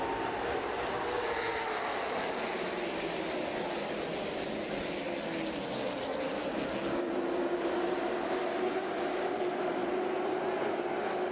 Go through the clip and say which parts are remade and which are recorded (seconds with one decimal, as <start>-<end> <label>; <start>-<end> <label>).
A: 0.0-11.3 recorded